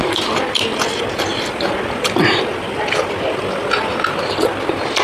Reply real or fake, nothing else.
real